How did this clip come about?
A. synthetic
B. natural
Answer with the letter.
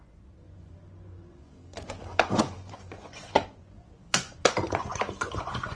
A